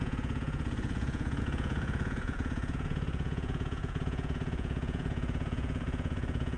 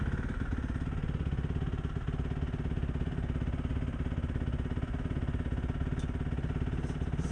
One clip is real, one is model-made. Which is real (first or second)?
second